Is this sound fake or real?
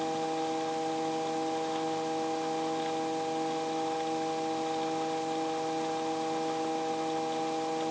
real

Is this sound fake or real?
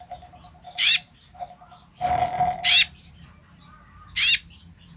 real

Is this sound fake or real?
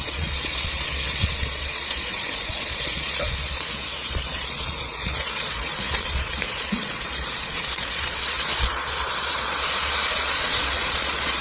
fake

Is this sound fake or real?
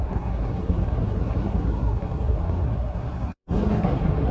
fake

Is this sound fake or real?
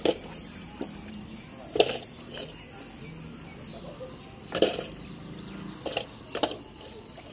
real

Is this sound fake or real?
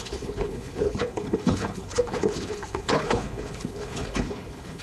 fake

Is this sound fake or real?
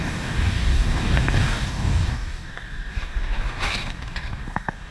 fake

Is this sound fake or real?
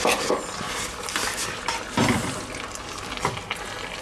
real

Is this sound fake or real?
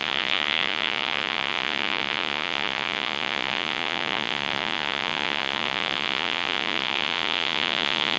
fake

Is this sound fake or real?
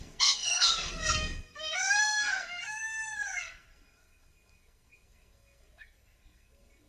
fake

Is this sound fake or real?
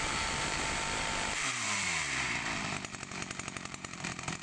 fake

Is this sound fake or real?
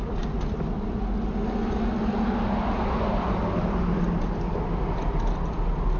real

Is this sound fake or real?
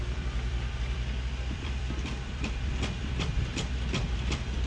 fake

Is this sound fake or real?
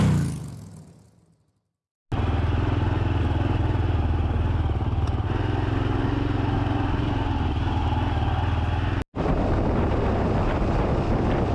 real